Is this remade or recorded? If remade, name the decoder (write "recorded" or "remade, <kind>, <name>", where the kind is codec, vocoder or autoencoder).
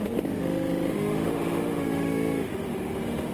remade, autoencoder, DAC-VAE